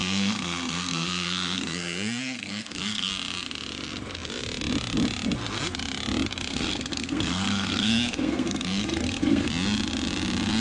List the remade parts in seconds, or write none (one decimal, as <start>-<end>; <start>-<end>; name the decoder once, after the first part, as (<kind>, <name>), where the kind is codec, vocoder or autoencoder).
0.0-3.1 (codec, SNAC); 6.5-9.5